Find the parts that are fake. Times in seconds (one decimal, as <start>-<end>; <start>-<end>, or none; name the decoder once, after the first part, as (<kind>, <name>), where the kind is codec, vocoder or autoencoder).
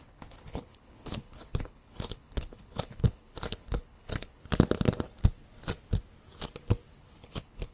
0.0-4.4 (codec, HILCodec); 7.0-7.7